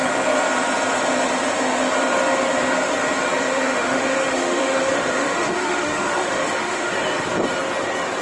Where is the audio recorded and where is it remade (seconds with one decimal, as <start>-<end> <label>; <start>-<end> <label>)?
0.0-3.5 recorded; 3.5-6.9 remade; 6.9-8.2 recorded